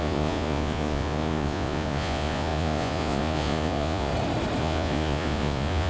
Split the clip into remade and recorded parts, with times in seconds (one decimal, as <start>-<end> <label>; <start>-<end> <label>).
0.0-4.1 remade; 4.1-4.6 recorded; 4.6-5.9 remade